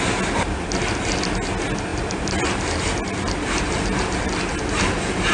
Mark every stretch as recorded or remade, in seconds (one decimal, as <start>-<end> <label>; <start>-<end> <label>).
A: 0.0-5.3 recorded